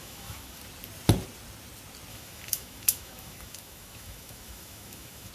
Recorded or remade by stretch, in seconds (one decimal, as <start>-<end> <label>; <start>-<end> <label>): 0.0-0.6 remade; 0.6-2.1 recorded; 2.1-5.3 remade